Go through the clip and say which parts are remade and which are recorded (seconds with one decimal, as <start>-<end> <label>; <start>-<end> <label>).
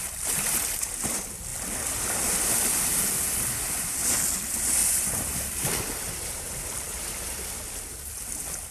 0.0-4.8 recorded; 4.8-7.1 remade; 7.1-8.7 recorded